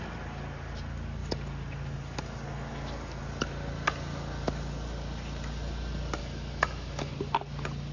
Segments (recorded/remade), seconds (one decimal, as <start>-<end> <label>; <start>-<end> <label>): 0.0-6.2 recorded; 6.2-7.1 remade; 7.1-7.9 recorded